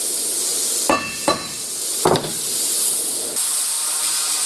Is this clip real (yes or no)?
yes